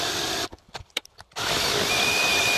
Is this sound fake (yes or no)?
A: yes